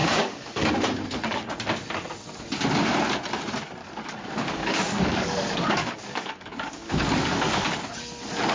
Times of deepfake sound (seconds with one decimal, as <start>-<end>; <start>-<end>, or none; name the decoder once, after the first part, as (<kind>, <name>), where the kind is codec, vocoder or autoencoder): 0.0-0.7 (codec, DAC); 3.8-7.8